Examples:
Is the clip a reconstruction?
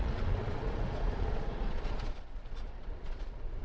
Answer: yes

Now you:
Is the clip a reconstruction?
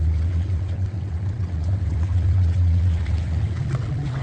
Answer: yes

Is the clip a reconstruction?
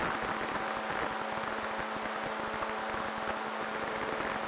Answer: no